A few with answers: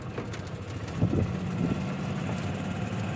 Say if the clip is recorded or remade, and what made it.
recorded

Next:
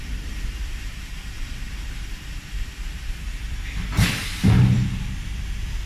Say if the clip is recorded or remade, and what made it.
remade, vocoder, BigVGAN v2